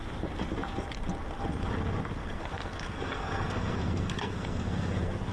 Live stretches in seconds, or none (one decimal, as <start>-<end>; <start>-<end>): 0.0-2.2